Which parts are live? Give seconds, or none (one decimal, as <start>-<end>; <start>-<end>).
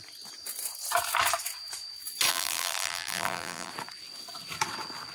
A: 0.0-2.3; 3.7-5.1